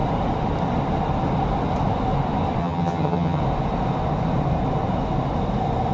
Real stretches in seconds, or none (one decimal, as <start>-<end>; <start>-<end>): 0.0-2.6; 3.4-5.9